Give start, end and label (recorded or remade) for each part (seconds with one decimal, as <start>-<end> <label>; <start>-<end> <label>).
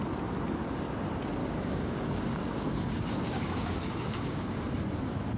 0.0-1.4 recorded; 1.4-4.6 remade; 4.6-5.4 recorded